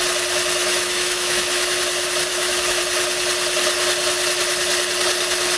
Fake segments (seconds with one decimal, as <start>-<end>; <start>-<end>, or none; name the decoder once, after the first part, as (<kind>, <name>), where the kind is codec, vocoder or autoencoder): 0.6-1.8 (autoencoder, DAC-VAE); 2.3-2.8